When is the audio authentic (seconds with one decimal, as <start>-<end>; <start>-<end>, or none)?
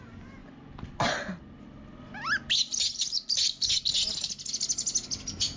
0.0-5.6